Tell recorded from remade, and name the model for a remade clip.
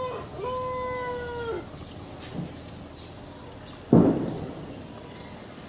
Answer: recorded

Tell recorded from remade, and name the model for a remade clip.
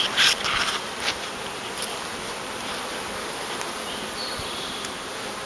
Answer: recorded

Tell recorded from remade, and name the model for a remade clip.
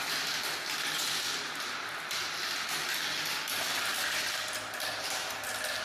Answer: recorded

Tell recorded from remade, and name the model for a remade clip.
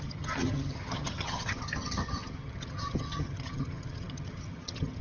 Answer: remade, vocoder, HiFi-GAN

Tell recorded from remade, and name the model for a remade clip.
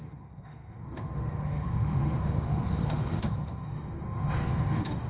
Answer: remade, autoencoder, DAC-VAE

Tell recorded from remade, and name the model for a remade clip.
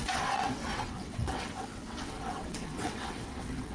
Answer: remade, vocoder, WaveNeXt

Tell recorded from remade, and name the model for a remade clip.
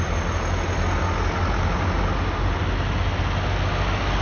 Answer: recorded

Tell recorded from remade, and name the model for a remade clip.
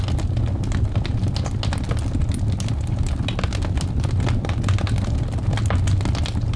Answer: recorded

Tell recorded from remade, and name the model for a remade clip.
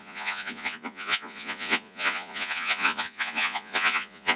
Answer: remade, vocoder, Vocos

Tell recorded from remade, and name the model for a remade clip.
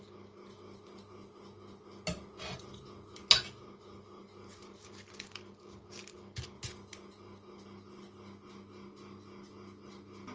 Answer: recorded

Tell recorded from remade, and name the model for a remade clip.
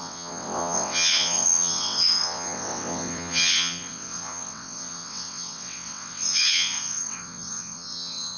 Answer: remade, vocoder, WaveNeXt